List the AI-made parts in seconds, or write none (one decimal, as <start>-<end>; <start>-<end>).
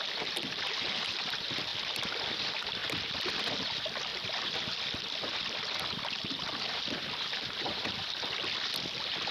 none